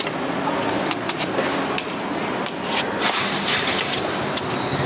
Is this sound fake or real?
real